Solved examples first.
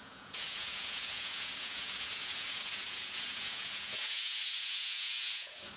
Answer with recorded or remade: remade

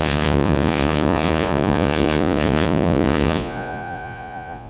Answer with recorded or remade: remade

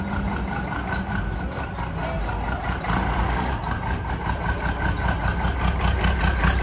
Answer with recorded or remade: recorded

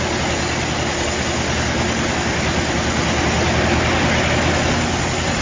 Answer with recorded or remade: recorded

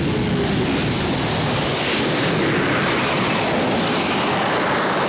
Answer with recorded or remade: recorded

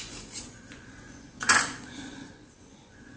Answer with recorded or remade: remade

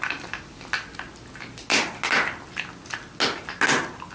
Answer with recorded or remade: recorded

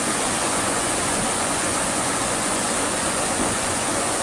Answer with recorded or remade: remade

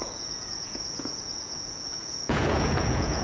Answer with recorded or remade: remade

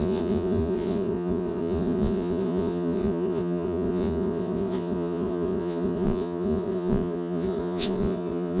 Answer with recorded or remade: remade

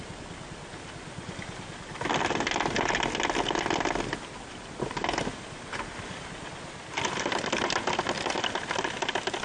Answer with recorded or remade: recorded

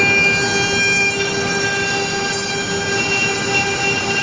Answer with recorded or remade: recorded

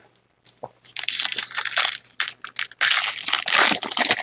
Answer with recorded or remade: recorded